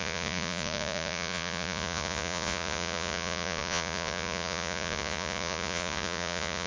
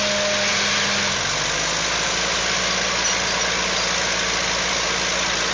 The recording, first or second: second